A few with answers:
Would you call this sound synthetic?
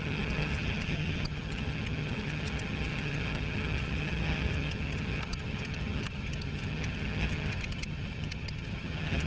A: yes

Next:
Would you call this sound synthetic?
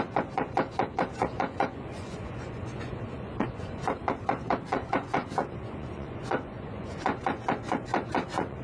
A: yes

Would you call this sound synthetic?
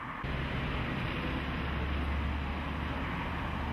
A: no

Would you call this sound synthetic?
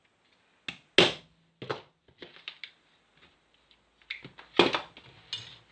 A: no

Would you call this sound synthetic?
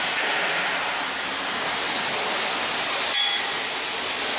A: no